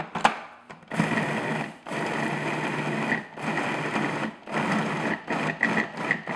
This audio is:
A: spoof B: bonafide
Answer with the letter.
B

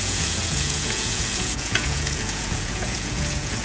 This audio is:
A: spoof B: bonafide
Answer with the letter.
A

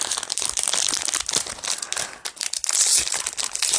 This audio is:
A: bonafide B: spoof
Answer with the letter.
A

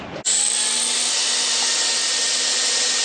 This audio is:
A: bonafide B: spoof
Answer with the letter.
A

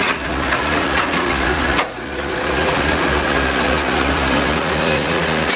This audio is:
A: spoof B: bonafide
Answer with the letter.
A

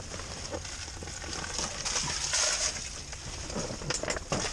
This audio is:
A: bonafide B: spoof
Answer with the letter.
A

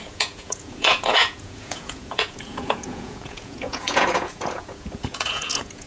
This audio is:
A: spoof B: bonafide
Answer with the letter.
A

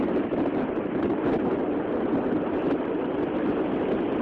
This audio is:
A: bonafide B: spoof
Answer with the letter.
A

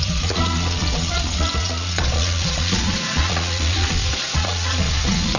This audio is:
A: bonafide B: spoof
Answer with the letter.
B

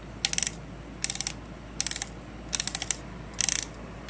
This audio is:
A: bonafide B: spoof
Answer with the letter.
A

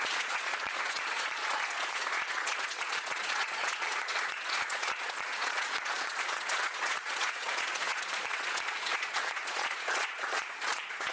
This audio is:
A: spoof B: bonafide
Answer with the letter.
A